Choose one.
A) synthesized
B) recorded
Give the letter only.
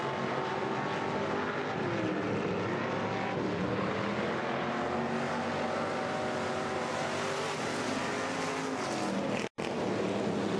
B